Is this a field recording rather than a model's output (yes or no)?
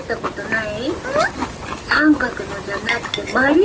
yes